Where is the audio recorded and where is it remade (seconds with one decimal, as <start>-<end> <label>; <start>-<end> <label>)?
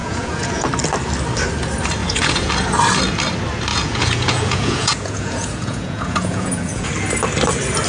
0.0-0.7 remade; 0.7-2.0 recorded; 2.0-2.5 remade; 2.5-3.7 recorded; 3.7-6.9 remade; 6.9-7.9 recorded